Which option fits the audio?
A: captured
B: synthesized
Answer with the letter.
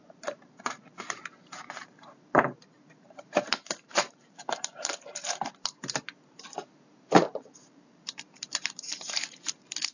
B